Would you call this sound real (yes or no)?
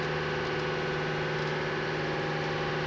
yes